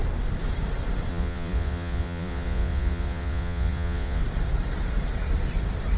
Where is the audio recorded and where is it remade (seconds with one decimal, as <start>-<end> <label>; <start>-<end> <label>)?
0.0-1.1 recorded; 1.1-4.2 remade; 4.2-6.0 recorded